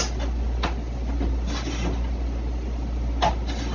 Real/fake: real